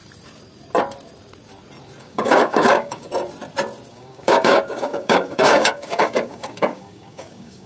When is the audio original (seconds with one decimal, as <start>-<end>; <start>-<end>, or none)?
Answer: 0.0-2.0; 3.1-3.9